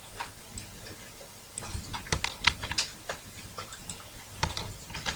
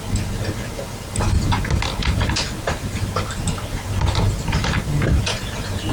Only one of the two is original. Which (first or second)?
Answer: second